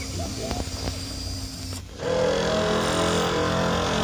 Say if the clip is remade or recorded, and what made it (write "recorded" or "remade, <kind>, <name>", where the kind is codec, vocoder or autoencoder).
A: recorded